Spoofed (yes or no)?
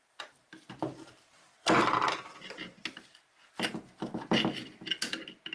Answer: no